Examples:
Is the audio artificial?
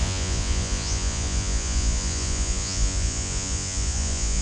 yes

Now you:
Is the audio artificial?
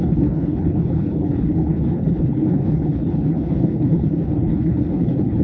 yes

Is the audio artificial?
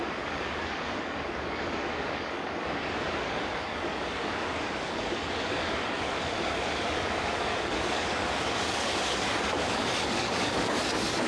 yes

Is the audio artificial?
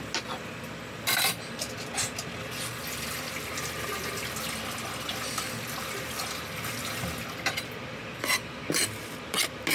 no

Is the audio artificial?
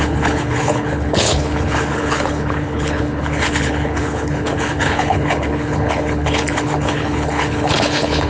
yes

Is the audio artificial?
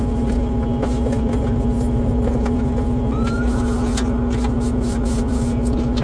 no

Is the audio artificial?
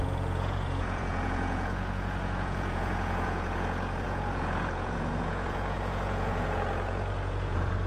yes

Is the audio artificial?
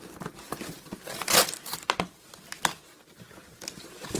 no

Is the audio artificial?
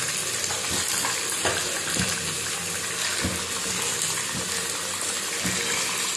no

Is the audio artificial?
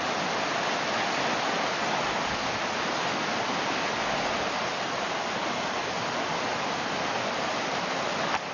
no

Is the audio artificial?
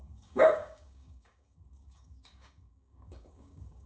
yes